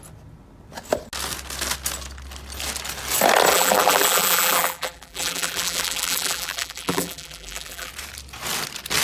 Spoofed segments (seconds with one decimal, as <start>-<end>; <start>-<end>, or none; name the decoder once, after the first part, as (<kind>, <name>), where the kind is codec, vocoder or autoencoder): 3.5-7.9 (vocoder, BigVGAN v2)